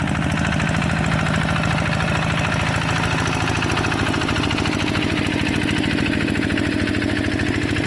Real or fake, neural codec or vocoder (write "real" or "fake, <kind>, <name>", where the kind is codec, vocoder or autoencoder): real